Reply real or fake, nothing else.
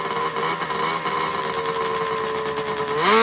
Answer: real